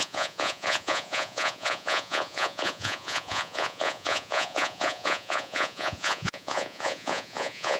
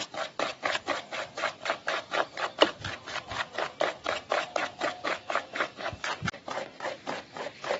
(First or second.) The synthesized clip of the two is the first